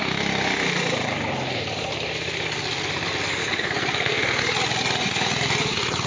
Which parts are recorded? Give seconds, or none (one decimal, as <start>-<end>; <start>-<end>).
0.0-3.4; 4.4-6.1